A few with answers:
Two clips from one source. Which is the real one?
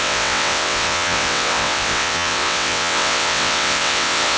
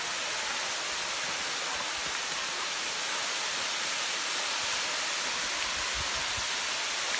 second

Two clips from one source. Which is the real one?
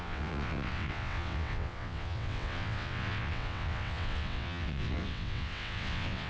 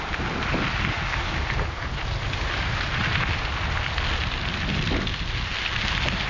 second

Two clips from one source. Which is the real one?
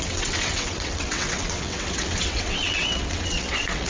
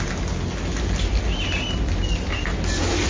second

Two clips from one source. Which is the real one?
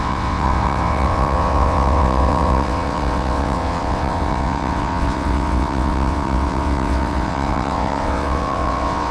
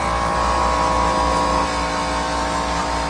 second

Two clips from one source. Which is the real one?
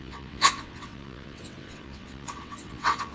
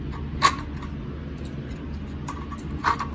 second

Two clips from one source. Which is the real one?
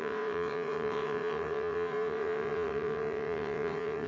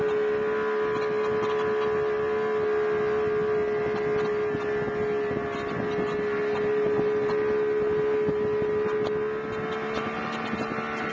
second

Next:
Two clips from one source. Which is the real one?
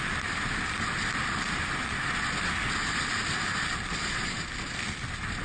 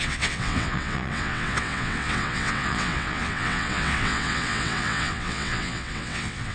first